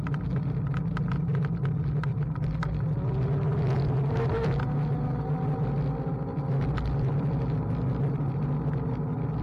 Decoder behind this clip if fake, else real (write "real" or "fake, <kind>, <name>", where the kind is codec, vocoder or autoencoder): real